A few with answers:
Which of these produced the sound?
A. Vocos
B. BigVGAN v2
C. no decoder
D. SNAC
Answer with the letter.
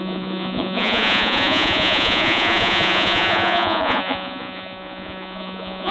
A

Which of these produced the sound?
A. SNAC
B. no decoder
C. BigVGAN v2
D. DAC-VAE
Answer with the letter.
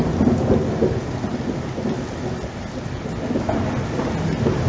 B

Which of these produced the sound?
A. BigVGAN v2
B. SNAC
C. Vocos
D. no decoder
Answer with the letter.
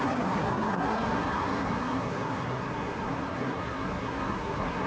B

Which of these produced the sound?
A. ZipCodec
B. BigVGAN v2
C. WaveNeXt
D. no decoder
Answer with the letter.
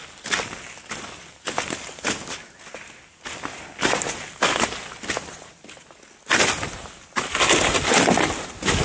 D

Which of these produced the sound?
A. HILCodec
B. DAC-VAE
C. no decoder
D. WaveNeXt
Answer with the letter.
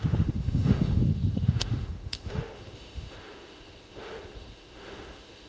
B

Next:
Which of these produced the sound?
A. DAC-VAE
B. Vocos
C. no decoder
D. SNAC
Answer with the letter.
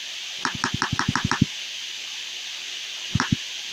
C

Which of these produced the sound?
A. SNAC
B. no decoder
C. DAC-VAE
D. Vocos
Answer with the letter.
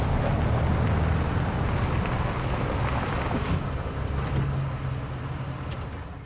B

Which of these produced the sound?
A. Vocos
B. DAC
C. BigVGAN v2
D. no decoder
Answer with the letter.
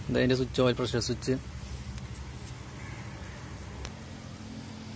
D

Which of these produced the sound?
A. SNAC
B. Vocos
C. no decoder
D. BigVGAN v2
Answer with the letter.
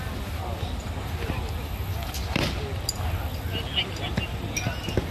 C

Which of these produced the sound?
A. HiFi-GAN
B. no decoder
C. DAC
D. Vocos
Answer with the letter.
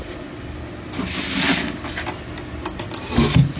B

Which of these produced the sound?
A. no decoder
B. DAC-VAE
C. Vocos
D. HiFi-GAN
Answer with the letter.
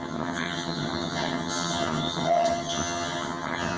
D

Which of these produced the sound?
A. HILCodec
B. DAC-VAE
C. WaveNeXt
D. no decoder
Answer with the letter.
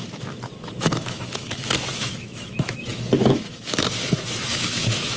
B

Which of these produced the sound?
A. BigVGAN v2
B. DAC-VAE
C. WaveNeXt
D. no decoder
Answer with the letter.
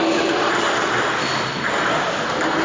D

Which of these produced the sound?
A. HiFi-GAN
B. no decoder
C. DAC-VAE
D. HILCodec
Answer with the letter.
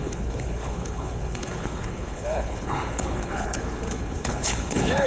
D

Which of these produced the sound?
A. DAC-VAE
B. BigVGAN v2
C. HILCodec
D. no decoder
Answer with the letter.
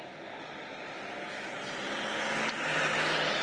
D